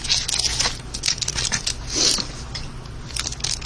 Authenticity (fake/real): real